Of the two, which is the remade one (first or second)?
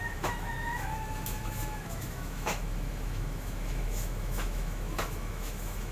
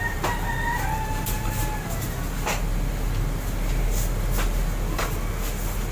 first